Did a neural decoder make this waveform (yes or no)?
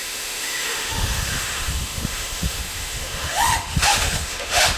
yes